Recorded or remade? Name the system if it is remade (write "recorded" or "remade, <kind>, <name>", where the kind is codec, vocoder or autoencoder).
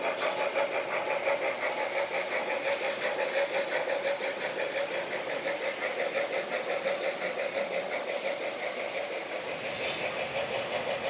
recorded